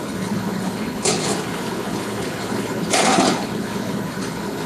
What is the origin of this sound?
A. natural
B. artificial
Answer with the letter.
B